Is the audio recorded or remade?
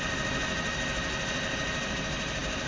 recorded